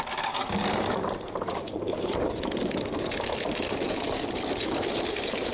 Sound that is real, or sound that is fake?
fake